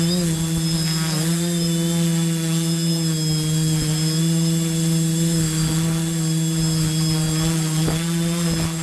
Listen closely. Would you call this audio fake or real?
real